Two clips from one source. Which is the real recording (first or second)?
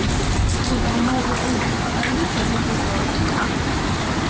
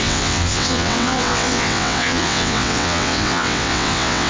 first